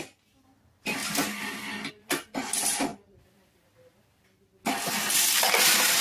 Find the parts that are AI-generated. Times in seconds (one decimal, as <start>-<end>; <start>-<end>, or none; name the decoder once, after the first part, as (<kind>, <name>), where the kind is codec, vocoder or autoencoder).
none